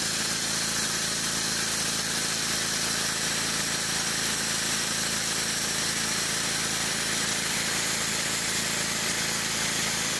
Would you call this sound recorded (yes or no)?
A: no